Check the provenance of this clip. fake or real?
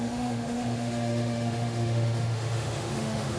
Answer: fake